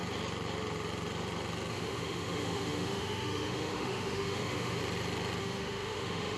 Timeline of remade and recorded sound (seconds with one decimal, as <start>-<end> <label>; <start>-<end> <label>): 0.0-1.7 recorded; 1.7-4.8 remade; 4.8-5.4 recorded; 5.4-6.4 remade